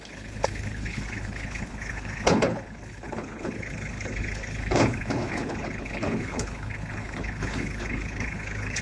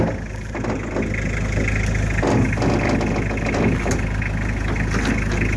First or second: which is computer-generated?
first